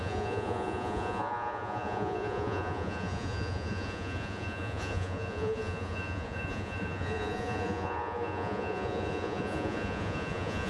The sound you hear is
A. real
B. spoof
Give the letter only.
B